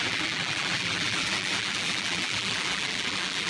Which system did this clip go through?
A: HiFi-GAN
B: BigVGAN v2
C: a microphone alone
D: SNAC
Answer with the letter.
B